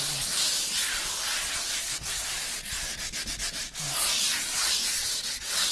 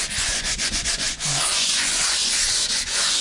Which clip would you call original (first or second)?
first